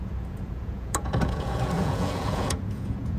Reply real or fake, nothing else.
fake